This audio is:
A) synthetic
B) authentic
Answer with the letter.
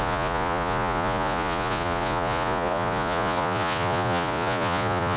A